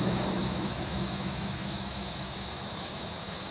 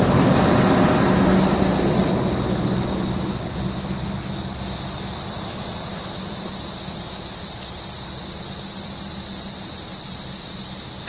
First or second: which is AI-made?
first